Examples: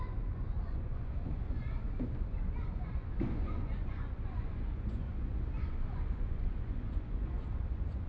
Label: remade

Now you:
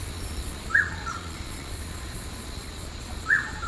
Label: remade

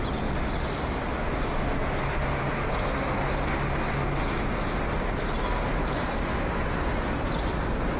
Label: recorded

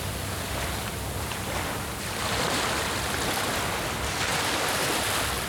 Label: recorded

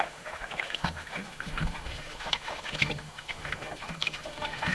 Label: remade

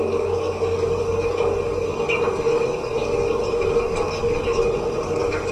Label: remade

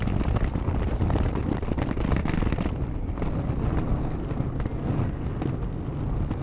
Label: recorded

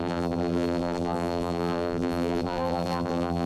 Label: remade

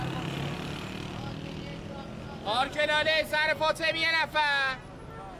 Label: recorded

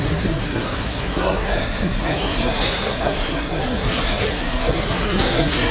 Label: remade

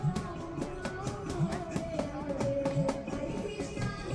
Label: recorded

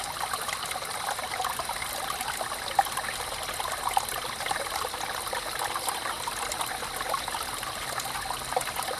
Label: recorded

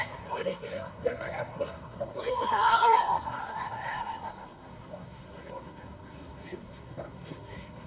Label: remade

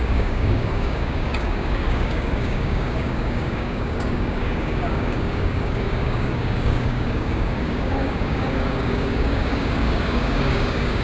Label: remade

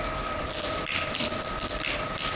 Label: recorded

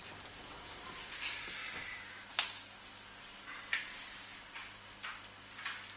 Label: recorded